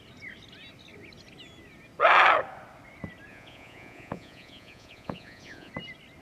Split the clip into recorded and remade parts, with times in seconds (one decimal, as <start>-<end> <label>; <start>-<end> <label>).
0.0-3.3 recorded; 3.3-5.7 remade; 5.7-6.2 recorded